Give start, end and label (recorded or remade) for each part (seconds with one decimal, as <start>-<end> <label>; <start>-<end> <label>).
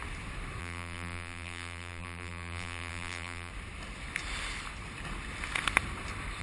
0.0-0.6 recorded; 0.6-3.5 remade; 3.5-6.4 recorded